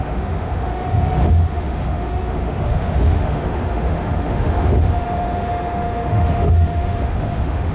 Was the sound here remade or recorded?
remade